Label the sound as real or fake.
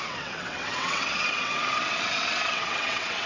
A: fake